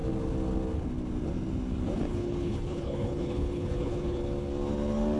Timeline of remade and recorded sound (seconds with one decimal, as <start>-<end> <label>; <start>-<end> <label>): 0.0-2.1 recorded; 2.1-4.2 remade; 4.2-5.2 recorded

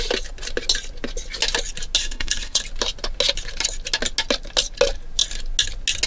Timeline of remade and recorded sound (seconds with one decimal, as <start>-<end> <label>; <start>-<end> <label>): 0.0-2.0 recorded; 2.0-2.6 remade; 2.6-6.1 recorded

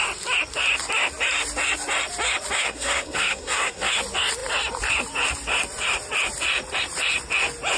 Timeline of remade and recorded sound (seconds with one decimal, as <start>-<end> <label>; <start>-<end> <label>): 0.0-2.6 recorded; 2.6-3.9 remade; 3.9-7.8 recorded